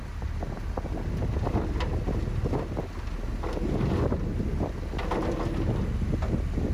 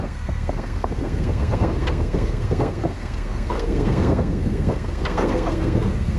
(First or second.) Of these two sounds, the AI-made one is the second